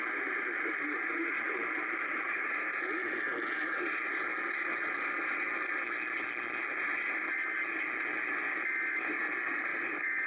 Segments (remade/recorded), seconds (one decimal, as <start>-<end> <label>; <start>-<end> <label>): 0.0-0.9 recorded; 0.9-1.6 remade; 1.6-9.7 recorded; 9.7-10.3 remade